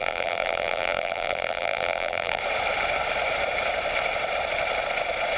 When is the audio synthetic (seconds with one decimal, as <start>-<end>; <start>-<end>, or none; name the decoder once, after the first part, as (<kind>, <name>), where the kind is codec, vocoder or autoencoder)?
0.0-2.4 (vocoder, BigVGAN v2)